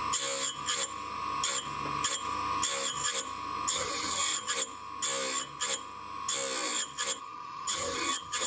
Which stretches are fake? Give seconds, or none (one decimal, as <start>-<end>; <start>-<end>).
3.7-4.3; 7.2-8.5